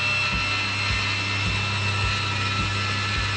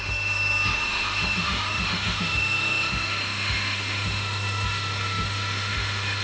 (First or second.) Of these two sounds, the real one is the first